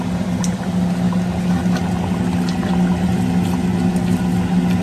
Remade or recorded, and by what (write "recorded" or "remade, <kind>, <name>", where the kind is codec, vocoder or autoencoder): recorded